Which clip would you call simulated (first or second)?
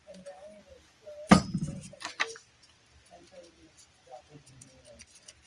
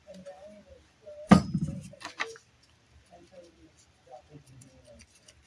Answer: second